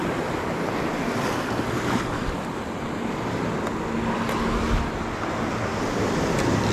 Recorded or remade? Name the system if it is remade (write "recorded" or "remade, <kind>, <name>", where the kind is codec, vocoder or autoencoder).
recorded